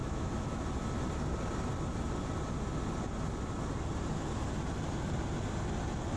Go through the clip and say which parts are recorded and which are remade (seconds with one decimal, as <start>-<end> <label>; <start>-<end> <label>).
0.0-0.6 remade; 0.6-6.2 recorded